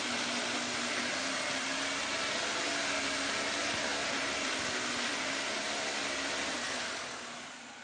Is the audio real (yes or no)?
yes